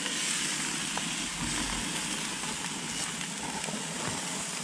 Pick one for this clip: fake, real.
real